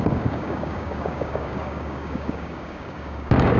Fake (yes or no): yes